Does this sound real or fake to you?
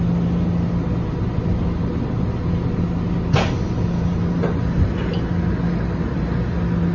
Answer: real